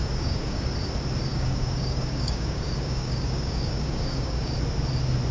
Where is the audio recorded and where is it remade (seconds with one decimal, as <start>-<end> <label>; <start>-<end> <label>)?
0.0-0.7 remade; 0.7-1.3 recorded; 1.3-4.5 remade; 4.5-5.3 recorded